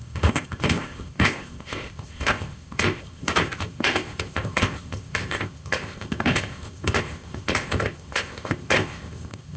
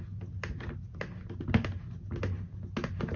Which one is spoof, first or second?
first